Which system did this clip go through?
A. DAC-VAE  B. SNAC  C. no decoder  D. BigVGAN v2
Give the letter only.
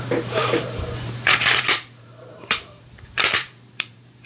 D